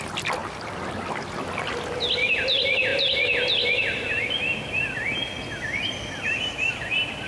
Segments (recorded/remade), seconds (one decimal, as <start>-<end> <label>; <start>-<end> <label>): 0.0-7.3 recorded